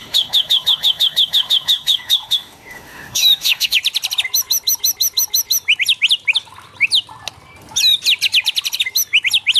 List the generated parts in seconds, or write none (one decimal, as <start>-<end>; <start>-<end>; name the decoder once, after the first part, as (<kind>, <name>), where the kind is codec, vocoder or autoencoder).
0.0-3.8 (autoencoder, DAC-VAE)